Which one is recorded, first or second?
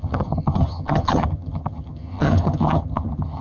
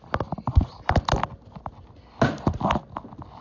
second